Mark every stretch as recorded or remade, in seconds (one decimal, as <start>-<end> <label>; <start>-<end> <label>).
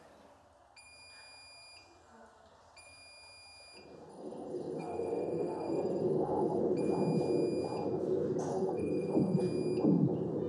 0.0-4.1 recorded; 4.1-6.6 remade; 6.6-8.5 recorded; 8.5-9.4 remade; 9.4-10.5 recorded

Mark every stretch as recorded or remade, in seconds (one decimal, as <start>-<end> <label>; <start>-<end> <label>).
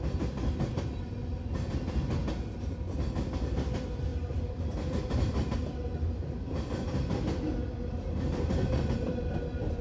0.0-4.1 recorded; 4.1-4.6 remade; 4.6-9.8 recorded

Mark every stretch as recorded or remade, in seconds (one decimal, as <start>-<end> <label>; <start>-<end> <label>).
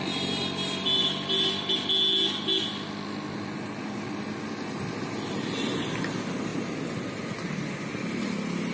0.0-8.7 recorded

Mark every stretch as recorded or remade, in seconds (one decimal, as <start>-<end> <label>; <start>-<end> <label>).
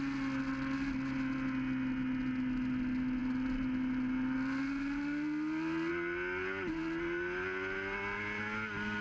0.0-9.0 recorded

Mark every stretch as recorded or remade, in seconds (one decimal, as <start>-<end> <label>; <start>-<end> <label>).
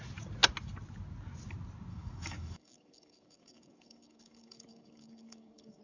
0.0-1.9 recorded; 1.9-5.8 remade